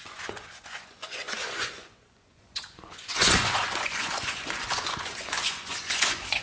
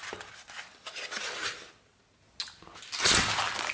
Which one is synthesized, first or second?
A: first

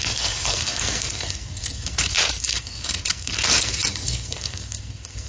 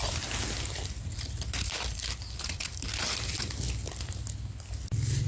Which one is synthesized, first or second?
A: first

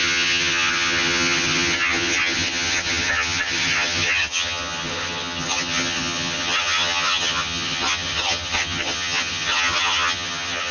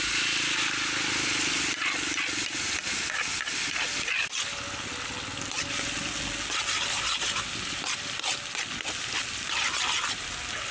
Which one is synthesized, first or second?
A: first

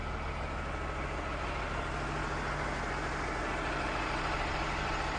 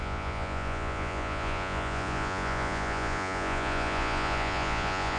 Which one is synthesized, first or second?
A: second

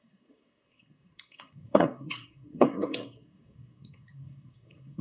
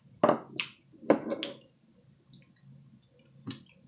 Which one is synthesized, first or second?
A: first